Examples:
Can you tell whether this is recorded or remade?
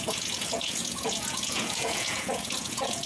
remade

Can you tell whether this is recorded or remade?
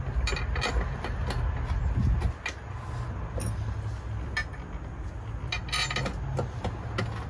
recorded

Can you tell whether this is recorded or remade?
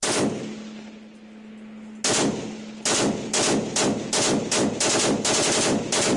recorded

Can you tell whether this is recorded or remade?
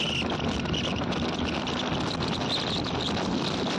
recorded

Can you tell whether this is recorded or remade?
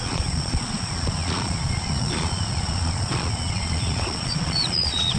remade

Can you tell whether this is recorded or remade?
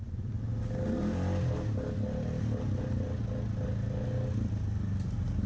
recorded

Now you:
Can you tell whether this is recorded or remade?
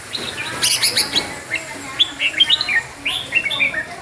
recorded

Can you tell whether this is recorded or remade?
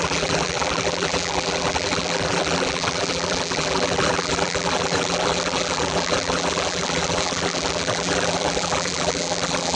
remade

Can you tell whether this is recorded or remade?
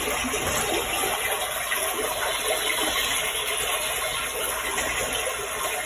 recorded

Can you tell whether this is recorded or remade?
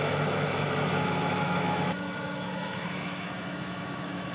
remade